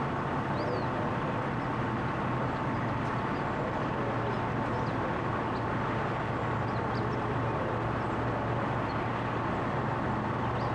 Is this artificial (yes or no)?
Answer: no